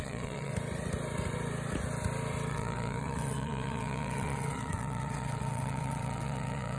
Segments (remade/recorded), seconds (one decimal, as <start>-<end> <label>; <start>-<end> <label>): 0.0-0.5 remade; 0.5-2.5 recorded; 2.5-6.8 remade